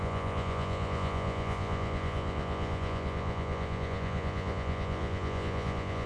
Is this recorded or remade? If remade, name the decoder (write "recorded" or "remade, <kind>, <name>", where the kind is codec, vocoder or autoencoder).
remade, vocoder, Vocos